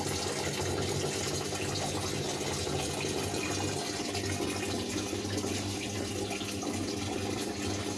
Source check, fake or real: real